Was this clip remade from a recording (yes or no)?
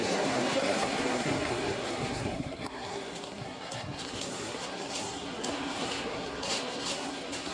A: yes